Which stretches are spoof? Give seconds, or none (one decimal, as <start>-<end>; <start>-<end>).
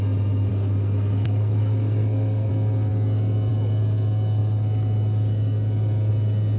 0.5-2.5